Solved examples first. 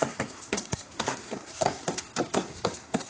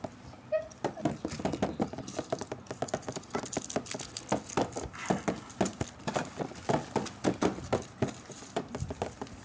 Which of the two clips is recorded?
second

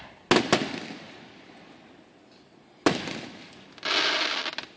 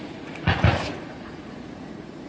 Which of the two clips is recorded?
first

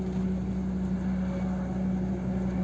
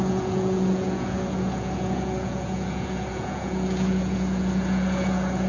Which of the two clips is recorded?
first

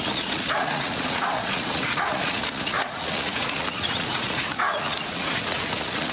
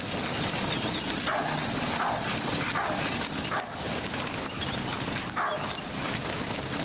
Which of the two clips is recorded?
second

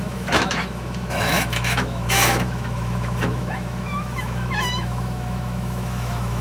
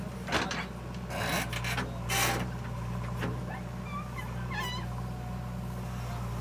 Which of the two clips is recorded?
second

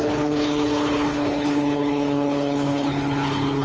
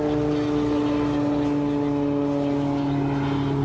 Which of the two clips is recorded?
second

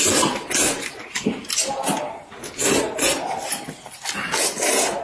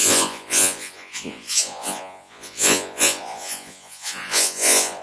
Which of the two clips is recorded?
first